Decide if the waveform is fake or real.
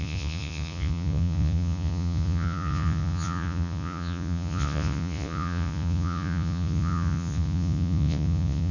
fake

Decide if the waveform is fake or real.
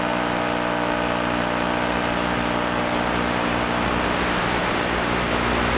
real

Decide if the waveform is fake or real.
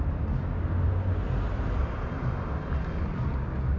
real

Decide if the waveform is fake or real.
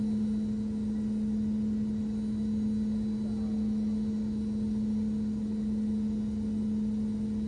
real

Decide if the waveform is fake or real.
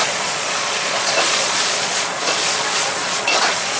fake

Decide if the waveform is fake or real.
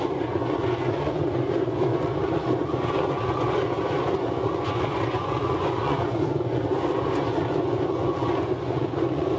fake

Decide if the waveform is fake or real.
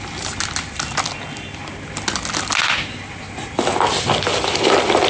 real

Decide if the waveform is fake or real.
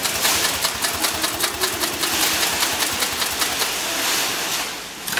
real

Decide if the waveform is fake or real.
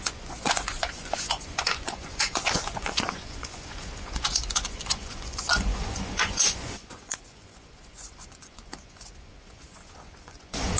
fake